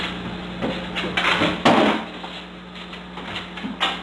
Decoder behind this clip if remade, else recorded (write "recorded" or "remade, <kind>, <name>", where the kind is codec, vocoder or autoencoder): recorded